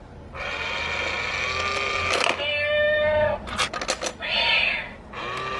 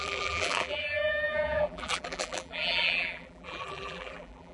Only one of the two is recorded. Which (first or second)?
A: first